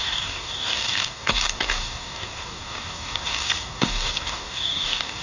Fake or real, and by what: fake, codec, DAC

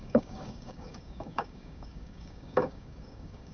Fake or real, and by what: fake, codec, DAC